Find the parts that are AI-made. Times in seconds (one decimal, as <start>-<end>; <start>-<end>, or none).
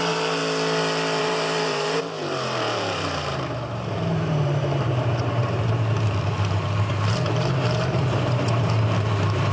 0.0-0.4; 1.2-9.5